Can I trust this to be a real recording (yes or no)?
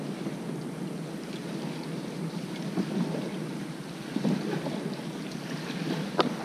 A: yes